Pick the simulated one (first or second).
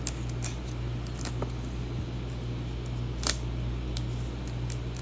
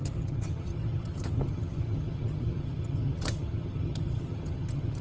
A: second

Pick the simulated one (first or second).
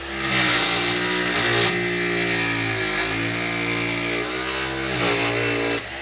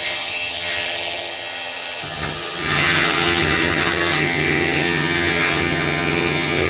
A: second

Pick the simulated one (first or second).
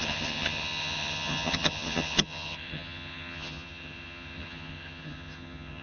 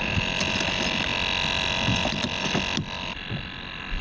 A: first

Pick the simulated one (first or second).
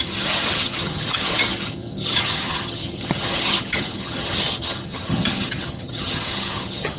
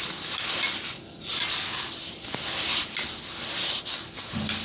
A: first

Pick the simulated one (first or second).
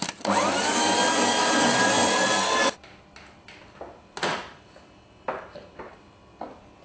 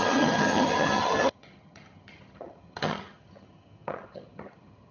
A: second